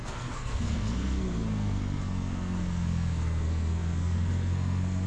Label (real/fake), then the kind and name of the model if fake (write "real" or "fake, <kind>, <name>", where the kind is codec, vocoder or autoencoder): fake, codec, SNAC